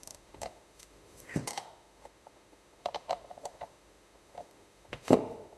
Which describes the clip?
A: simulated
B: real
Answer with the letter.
A